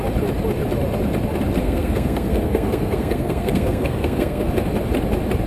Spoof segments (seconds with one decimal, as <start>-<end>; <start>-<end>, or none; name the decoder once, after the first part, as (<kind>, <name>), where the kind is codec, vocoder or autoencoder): 1.6-4.5 (codec, SNAC)